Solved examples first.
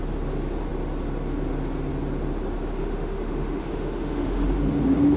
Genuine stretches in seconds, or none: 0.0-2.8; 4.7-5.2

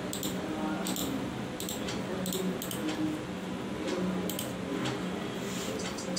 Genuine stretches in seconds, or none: 0.0-6.2

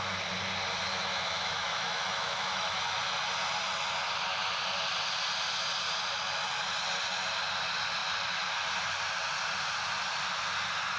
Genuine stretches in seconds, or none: 0.0-0.9; 2.8-11.0